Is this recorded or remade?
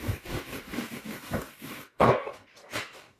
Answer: remade